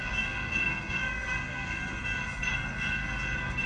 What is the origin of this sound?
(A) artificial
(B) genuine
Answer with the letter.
A